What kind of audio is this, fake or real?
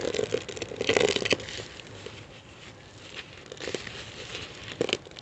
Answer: real